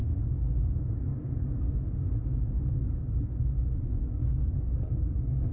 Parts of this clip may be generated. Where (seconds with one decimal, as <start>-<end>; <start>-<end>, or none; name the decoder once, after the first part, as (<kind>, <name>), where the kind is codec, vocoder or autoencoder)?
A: 0.0-5.5 (codec, DAC)